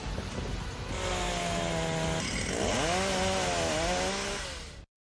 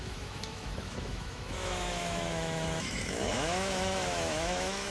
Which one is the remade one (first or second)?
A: second